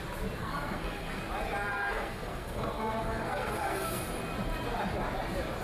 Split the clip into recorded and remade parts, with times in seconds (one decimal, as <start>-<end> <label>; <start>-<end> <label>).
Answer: 0.0-0.4 recorded; 0.4-1.2 remade; 1.2-1.7 recorded; 1.7-4.0 remade; 4.0-5.6 recorded